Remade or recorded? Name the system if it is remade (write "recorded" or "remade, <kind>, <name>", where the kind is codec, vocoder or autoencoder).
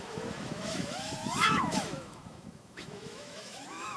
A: remade, autoencoder, DAC-VAE